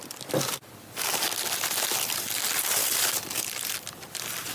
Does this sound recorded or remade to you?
remade